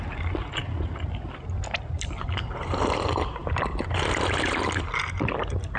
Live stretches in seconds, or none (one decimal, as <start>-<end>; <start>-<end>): 0.0-5.8